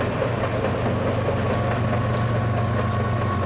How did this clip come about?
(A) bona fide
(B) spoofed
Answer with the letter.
A